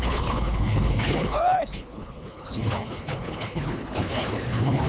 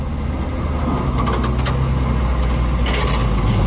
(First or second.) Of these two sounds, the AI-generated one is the first